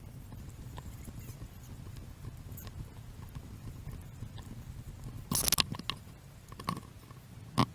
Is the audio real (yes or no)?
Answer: yes